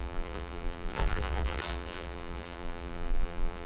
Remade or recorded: remade